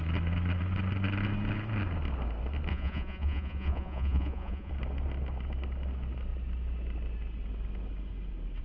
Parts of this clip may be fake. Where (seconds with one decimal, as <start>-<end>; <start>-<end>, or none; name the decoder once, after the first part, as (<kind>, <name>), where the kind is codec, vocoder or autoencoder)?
2.7-4.7 (vocoder, Vocos)